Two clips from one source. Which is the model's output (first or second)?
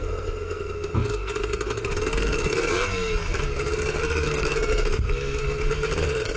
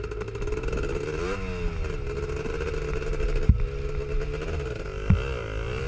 first